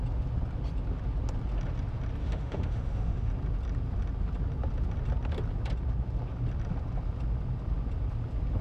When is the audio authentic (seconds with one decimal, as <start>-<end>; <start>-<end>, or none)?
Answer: 0.0-2.2; 3.3-8.6